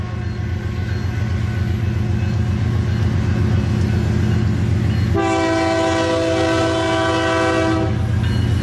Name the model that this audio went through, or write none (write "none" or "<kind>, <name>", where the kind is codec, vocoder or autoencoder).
none